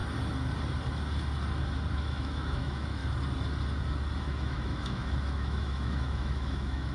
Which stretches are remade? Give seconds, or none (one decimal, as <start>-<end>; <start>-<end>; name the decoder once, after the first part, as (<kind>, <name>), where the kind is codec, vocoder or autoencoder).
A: 1.9-3.0 (autoencoder, DAC-VAE); 4.2-6.9